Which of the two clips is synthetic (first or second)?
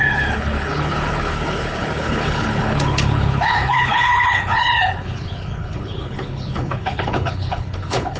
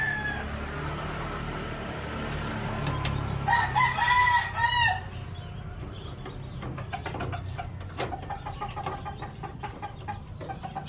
first